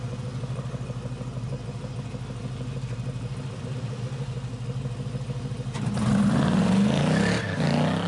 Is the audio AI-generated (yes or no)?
no